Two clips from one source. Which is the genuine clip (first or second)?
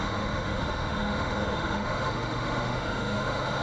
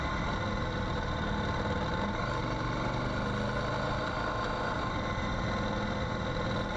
second